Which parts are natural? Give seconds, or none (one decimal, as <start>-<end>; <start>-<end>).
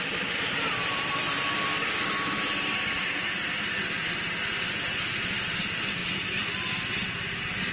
0.8-5.4